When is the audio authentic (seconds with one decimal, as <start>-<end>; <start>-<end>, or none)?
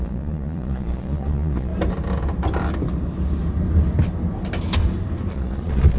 1.7-5.3